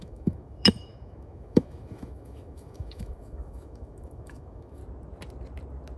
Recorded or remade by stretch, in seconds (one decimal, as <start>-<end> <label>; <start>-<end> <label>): 0.0-4.8 remade; 4.8-6.0 recorded